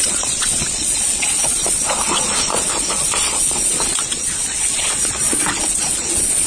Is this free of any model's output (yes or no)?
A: no